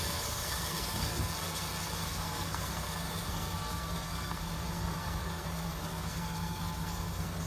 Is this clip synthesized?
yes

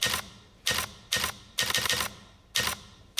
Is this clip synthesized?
no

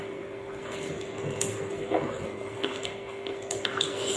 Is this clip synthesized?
yes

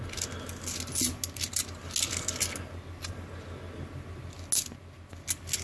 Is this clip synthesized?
no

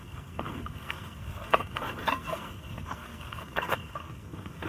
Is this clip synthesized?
yes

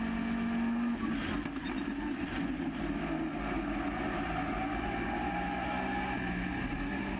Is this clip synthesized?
no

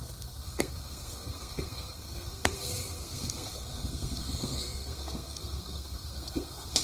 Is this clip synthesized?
yes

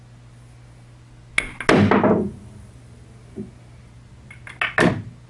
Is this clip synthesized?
no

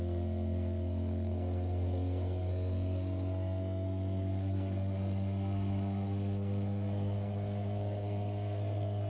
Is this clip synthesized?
yes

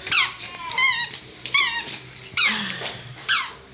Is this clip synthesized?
no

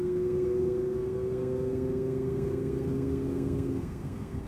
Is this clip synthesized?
yes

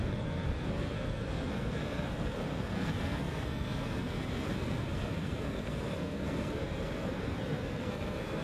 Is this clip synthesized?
yes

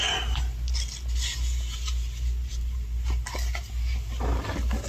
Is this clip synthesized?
no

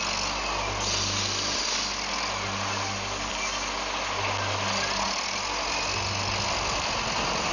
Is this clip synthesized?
no